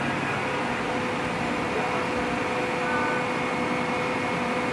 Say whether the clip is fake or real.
real